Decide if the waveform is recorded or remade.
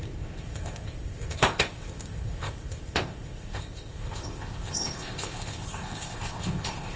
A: remade